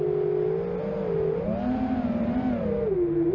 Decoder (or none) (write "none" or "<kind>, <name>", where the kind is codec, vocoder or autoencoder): none